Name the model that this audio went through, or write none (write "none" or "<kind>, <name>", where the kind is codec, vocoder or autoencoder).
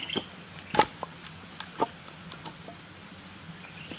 none